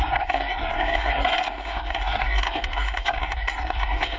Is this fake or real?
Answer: fake